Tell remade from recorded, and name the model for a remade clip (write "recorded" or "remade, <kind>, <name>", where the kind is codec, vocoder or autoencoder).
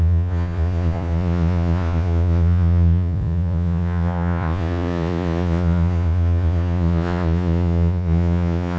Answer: remade, vocoder, Vocos